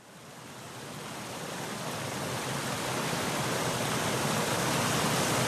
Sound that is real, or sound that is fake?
real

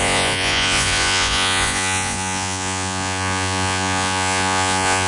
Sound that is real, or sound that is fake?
fake